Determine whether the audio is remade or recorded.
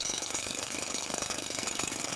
remade